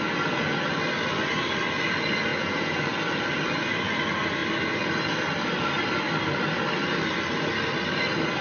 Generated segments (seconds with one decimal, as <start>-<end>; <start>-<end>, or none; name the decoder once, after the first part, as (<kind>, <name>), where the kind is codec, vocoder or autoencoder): 2.3-2.8 (vocoder, Vocos)